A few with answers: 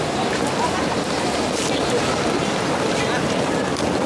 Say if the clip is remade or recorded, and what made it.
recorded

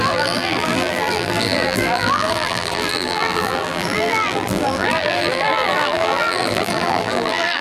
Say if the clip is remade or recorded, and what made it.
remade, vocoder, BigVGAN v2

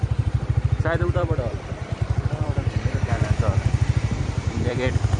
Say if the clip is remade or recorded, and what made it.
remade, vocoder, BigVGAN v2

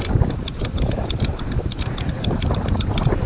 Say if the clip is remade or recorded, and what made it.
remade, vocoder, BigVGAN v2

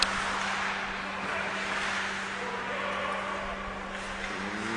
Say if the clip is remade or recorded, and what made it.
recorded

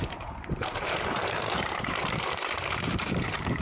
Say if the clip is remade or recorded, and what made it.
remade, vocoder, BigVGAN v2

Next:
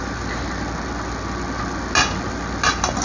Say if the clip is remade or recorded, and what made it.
recorded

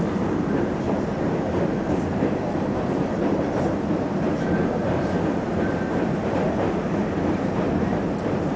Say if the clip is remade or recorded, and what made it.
remade, vocoder, BigVGAN v2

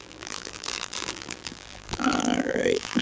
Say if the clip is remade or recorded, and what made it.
remade, vocoder, BigVGAN v2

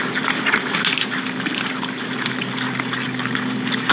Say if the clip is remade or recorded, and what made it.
recorded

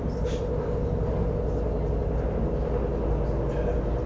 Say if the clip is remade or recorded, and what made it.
recorded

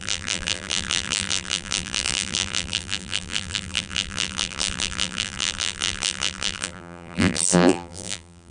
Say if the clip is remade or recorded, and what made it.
remade, vocoder, BigVGAN v2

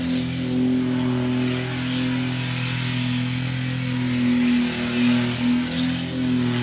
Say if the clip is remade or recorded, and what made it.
recorded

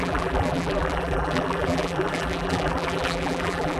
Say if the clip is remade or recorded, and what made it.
remade, vocoder, BigVGAN v2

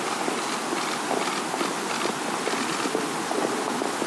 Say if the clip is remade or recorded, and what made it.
recorded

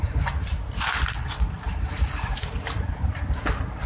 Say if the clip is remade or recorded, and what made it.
remade, vocoder, BigVGAN v2